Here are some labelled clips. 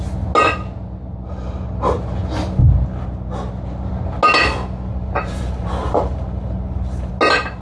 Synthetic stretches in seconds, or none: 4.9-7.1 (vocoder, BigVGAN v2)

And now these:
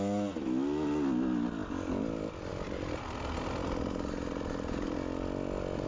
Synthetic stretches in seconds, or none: none

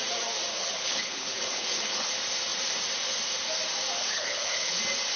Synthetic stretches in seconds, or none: 0.5-2.1 (codec, HILCodec); 4.0-4.8

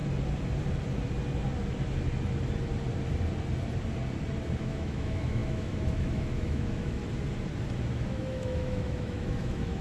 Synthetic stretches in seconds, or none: 4.6-7.0 (autoencoder, DAC-VAE); 7.9-9.8

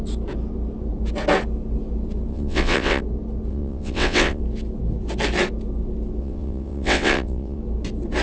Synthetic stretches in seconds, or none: 2.3-3.0 (vocoder, WaveNeXt); 3.5-4.4; 6.2-7.6

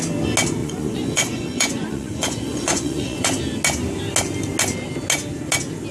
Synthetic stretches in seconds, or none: 0.6-3.4 (vocoder, Vocos)